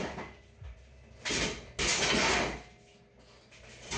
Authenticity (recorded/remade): recorded